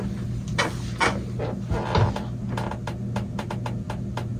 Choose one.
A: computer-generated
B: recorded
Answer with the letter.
B